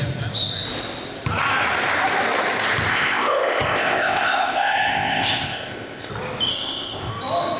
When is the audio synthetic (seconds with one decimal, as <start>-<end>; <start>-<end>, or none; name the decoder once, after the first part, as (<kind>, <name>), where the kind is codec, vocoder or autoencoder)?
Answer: 2.9-6.1 (codec, ZipCodec); 6.5-7.1